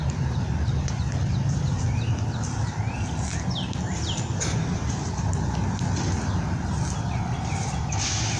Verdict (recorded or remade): recorded